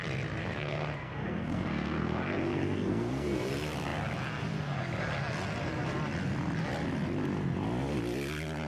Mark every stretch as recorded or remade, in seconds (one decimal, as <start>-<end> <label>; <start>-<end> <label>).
0.0-0.4 recorded; 0.4-3.5 remade; 3.5-8.7 recorded